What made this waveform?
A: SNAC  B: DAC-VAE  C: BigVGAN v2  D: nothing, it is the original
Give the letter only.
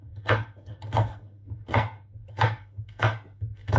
A